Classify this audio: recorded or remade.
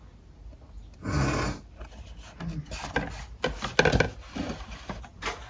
recorded